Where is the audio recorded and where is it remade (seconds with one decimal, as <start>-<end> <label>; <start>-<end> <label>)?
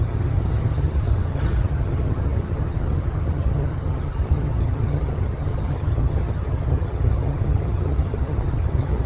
0.0-9.1 remade